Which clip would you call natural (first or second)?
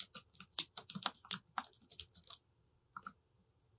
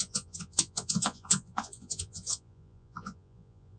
first